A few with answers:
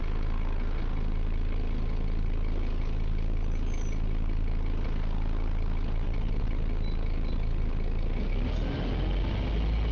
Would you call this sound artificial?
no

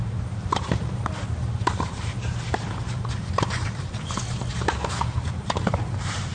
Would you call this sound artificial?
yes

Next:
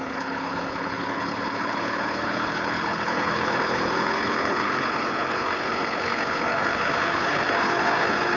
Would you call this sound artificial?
yes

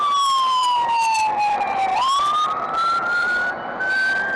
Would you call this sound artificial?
yes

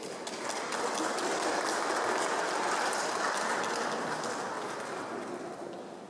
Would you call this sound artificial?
no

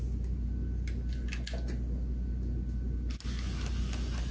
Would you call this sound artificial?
no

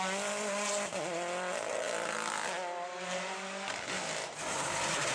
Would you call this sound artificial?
no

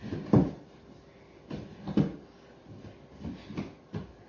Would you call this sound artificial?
no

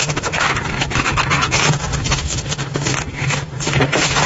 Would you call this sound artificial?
yes